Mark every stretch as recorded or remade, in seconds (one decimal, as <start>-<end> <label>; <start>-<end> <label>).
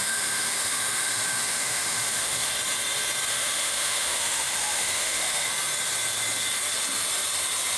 0.0-2.5 remade; 2.5-3.3 recorded; 3.3-5.5 remade; 5.5-7.8 recorded